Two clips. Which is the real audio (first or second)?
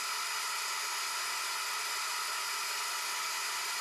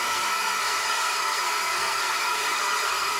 first